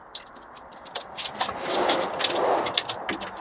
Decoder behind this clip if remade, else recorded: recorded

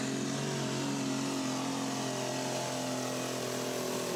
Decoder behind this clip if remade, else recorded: recorded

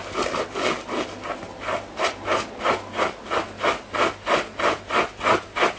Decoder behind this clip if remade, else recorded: recorded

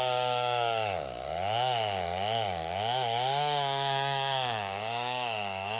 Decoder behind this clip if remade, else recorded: remade, codec, DAC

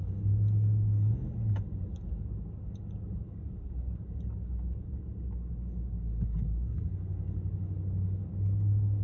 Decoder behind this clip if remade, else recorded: remade, codec, DAC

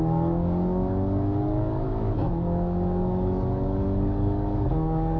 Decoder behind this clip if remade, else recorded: remade, codec, DAC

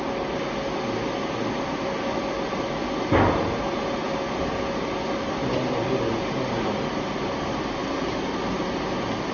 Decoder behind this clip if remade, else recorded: recorded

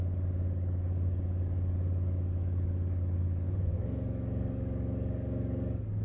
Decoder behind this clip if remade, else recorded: remade, codec, DAC